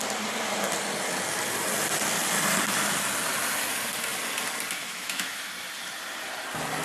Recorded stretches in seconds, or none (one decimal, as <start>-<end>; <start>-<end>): 0.0-4.8; 5.5-6.8